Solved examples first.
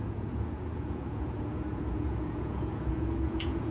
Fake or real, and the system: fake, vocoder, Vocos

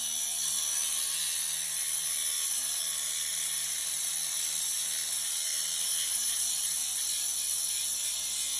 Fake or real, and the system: real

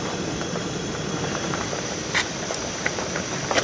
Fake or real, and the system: fake, vocoder, BigVGAN v2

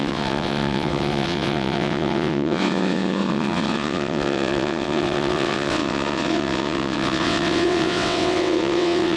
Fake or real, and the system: fake, vocoder, WaveNeXt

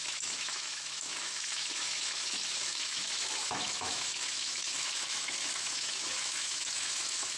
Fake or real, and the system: fake, autoencoder, DAC-VAE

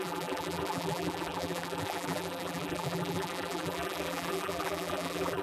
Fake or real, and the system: fake, vocoder, BigVGAN v2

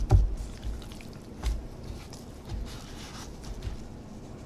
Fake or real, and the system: real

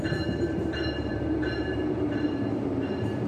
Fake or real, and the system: fake, vocoder, BigVGAN v2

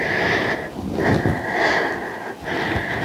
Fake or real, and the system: real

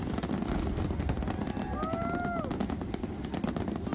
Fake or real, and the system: real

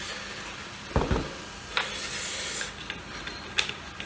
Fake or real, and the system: real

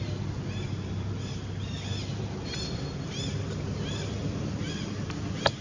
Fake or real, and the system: real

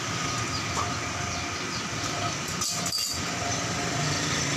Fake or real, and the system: real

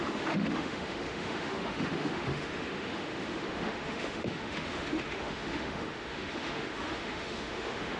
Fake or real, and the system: fake, autoencoder, DAC-VAE